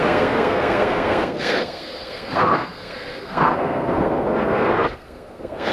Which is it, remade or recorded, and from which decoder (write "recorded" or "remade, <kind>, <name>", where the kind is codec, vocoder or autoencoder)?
remade, codec, SNAC